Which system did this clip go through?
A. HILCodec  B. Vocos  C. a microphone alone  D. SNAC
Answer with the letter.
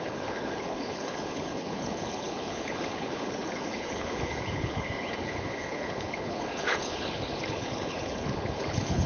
A